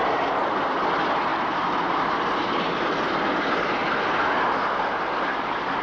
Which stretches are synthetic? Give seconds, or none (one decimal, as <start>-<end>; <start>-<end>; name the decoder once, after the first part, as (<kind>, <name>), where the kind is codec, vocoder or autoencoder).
none